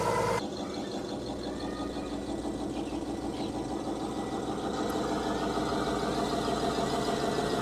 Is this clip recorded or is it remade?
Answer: recorded